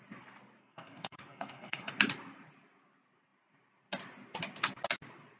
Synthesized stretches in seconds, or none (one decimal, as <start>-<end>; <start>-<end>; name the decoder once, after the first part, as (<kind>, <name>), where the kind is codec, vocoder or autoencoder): 0.6-1.9 (codec, SNAC)